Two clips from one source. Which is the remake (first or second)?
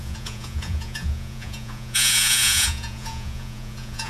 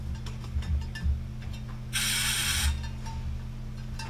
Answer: first